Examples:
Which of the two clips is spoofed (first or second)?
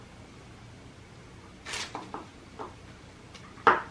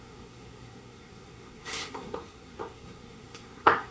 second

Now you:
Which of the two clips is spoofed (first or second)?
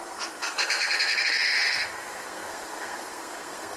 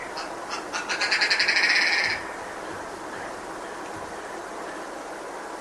first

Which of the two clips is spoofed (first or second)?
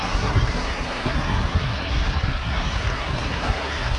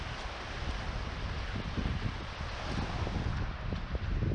first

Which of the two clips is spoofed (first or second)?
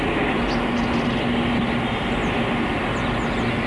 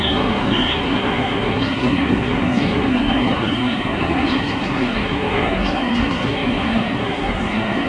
second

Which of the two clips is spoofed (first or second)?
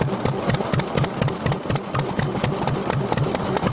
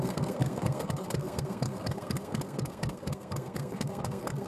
second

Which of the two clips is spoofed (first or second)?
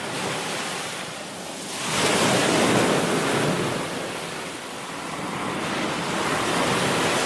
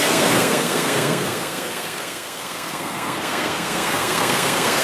second